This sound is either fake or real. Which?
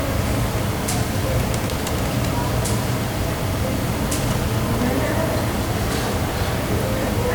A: real